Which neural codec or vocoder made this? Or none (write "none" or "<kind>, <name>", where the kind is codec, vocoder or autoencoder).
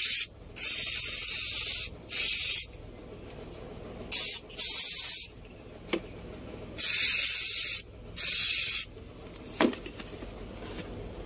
none